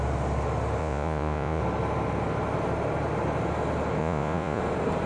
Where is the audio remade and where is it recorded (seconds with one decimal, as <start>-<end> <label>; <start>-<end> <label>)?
0.0-0.8 recorded; 0.8-1.6 remade; 1.6-4.0 recorded; 4.0-4.6 remade; 4.6-5.1 recorded